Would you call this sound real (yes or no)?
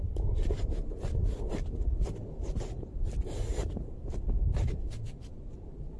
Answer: yes